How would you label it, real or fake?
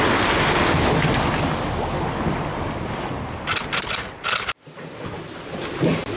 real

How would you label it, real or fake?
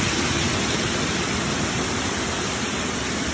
real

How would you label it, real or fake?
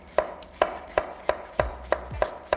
real